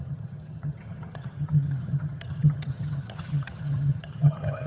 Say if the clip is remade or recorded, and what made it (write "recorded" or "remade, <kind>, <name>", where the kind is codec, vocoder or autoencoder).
remade, vocoder, HiFi-GAN